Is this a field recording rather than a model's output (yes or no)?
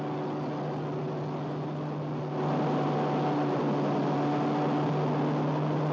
yes